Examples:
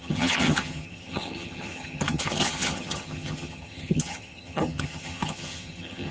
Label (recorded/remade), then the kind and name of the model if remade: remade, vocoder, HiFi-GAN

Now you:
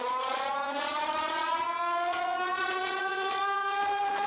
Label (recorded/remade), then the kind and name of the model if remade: remade, vocoder, Vocos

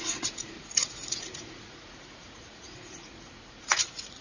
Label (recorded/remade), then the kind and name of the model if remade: remade, vocoder, Vocos